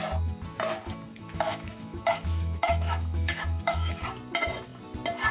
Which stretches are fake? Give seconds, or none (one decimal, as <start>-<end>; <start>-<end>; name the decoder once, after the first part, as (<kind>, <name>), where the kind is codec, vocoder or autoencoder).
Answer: 1.1-4.0 (autoencoder, DAC-VAE)